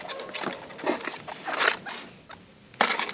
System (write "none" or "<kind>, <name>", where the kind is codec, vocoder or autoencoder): none